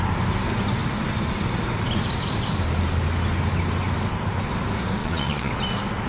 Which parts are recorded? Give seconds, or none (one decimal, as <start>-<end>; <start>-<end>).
0.0-5.0; 5.5-6.1